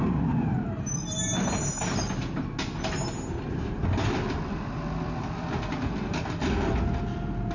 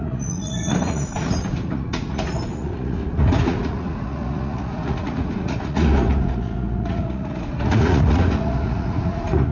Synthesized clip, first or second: second